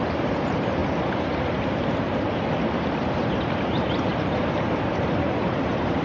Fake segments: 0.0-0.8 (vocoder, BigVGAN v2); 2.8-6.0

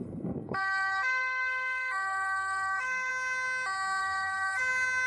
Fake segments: 0.0-3.1 (codec, SNAC); 4.0-4.6

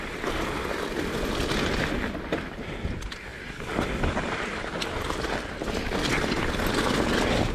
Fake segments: none